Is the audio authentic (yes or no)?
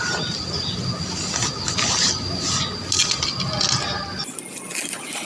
yes